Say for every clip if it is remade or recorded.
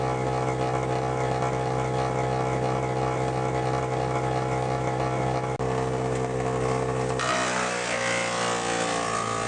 recorded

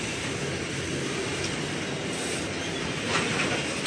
recorded